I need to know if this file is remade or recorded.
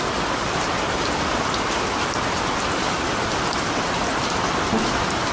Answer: recorded